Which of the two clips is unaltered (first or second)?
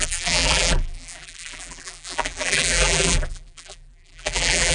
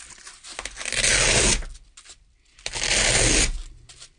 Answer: second